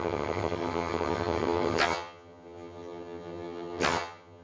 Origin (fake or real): fake